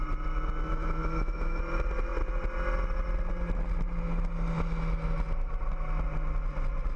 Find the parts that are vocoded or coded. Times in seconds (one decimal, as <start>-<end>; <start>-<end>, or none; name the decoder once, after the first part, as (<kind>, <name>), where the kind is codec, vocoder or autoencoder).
0.7-1.6 (autoencoder, DAC-VAE)

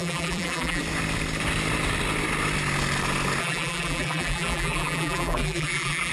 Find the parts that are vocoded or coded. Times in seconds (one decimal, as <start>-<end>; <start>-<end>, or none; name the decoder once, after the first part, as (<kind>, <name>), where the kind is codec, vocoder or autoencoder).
0.0-0.8 (vocoder, BigVGAN v2); 3.4-6.1

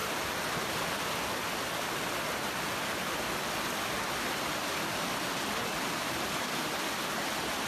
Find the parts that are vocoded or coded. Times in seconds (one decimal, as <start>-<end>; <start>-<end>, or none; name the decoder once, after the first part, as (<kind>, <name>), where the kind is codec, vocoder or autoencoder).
none

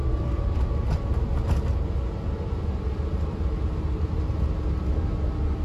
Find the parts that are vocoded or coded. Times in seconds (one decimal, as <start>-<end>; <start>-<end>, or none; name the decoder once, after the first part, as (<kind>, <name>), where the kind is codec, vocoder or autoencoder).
none